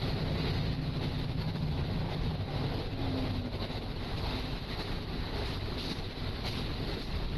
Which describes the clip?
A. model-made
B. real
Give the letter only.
B